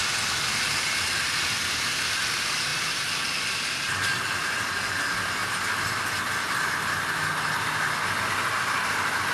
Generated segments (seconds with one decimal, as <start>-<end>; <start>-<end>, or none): none